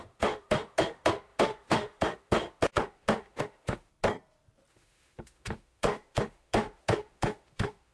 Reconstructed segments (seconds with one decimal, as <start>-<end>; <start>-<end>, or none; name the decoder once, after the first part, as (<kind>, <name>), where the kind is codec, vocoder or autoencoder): 0.0-3.9 (autoencoder, DAC-VAE); 4.7-7.9